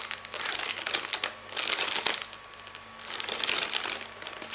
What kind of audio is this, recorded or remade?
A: recorded